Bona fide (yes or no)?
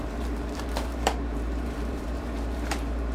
no